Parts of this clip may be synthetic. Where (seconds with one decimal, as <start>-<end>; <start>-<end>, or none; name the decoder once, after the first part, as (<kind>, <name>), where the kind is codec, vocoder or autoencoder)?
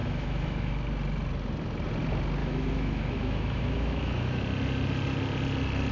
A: 0.0-0.7 (autoencoder, DAC-VAE); 2.4-4.4